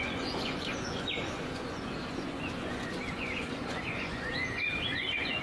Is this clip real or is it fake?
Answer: fake